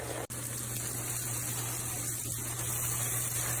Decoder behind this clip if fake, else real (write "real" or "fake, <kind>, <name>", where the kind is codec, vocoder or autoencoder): real